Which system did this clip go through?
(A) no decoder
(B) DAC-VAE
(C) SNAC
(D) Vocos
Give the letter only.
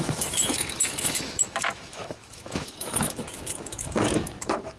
B